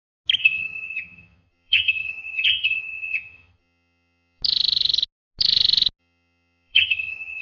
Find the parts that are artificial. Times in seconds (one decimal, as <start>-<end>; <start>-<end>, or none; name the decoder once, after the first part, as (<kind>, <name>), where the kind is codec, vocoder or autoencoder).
0.4-4.4 (vocoder, HiFi-GAN); 6.0-7.4